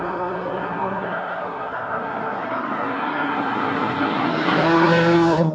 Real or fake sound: fake